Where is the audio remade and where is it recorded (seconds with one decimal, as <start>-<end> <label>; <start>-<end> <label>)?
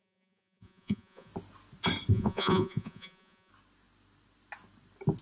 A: 0.0-1.3 remade; 1.3-2.1 recorded; 2.1-3.5 remade; 3.5-5.2 recorded